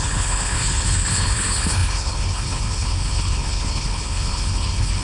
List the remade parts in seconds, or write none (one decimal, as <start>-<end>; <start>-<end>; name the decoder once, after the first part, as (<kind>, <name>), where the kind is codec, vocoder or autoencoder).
0.0-5.0 (codec, HILCodec)